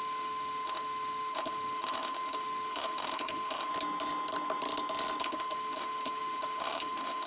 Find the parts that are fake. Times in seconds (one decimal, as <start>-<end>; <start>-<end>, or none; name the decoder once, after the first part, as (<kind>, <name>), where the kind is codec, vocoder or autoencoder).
0.0-3.7 (autoencoder, DAC-VAE); 5.2-7.3